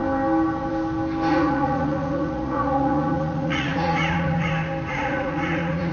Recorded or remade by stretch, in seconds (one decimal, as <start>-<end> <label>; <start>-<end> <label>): 0.0-1.3 recorded; 1.3-4.5 remade; 4.5-4.9 recorded; 4.9-5.9 remade